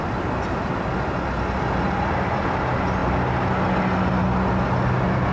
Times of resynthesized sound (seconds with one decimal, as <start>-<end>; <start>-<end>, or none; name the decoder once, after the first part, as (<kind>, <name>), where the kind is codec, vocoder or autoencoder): none